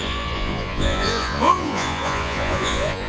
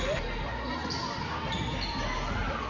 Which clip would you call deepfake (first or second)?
first